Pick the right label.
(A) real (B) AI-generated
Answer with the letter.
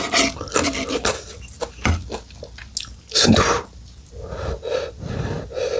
A